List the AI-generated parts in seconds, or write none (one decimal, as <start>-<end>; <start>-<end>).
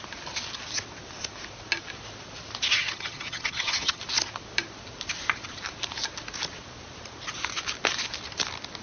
2.7-4.0